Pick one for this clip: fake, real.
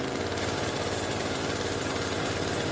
real